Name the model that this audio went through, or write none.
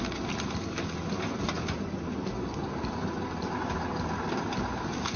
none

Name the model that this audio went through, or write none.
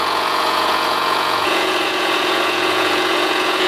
vocoder, Vocos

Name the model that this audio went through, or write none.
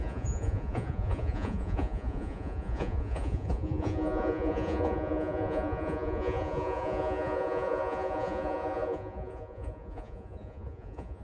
vocoder, Vocos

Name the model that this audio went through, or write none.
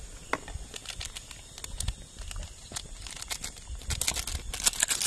none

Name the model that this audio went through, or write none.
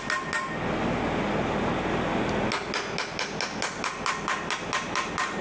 none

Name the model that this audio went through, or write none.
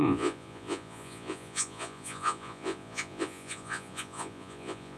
vocoder, Vocos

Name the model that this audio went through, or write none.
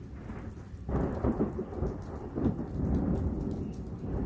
none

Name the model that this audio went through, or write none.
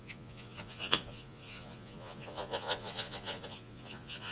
vocoder, Vocos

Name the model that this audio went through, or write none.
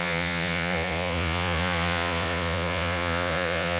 vocoder, Vocos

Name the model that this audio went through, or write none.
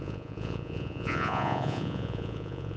vocoder, Vocos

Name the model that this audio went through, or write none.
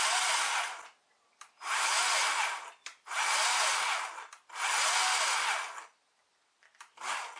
none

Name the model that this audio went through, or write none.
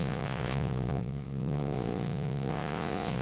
vocoder, Vocos